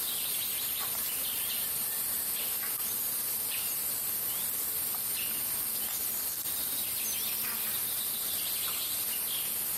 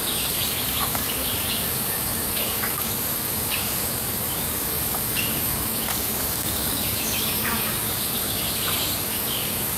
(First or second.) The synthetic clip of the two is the second